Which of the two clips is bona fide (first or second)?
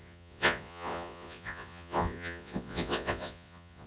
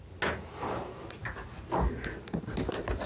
second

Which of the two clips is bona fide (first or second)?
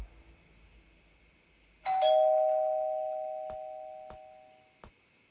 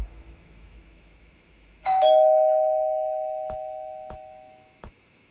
first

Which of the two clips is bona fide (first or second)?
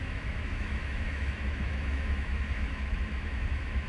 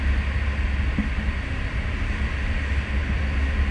second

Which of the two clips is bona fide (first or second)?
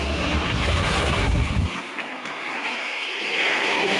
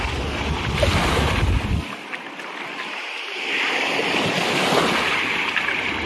second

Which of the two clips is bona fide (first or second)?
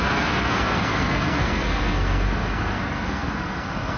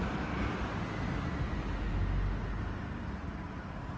second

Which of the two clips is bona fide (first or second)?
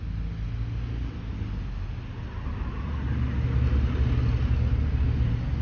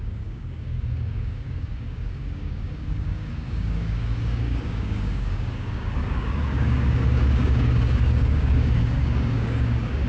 first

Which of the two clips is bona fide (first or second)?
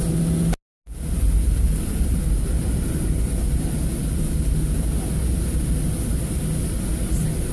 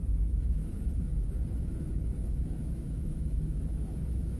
first